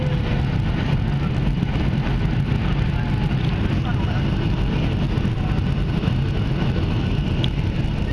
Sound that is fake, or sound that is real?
real